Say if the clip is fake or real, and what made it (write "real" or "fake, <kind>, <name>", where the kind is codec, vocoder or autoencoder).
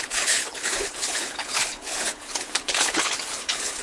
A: fake, codec, HILCodec